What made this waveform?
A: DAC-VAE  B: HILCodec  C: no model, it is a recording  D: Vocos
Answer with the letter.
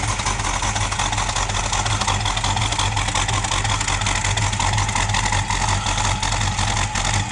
C